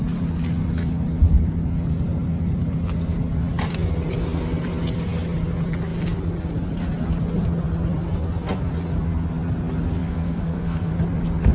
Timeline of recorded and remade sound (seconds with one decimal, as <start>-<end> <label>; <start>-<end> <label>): 0.0-10.0 recorded; 10.0-10.9 remade; 10.9-11.5 recorded